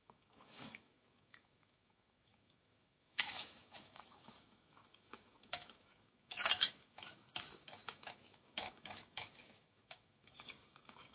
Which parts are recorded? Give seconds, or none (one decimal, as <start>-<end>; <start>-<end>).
none